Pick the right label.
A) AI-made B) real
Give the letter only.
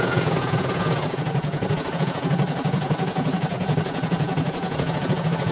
A